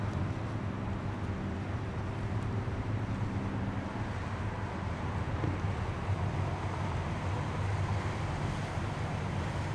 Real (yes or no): yes